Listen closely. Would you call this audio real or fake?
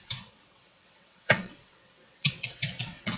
fake